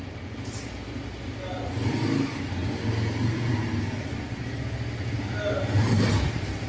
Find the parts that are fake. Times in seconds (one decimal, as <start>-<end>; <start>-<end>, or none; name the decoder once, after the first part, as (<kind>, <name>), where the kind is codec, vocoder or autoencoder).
none